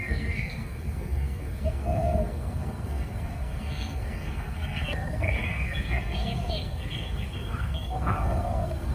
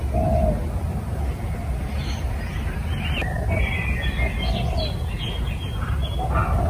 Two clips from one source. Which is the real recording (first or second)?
second